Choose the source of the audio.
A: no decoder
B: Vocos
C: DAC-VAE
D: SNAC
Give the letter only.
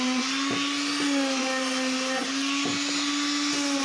A